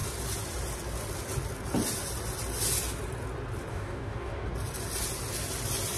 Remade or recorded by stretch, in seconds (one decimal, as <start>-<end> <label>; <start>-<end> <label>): 0.0-3.7 recorded; 3.7-4.5 remade; 4.5-6.0 recorded